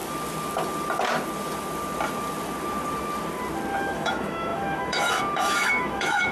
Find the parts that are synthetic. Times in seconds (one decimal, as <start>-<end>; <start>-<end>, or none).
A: 3.8-6.3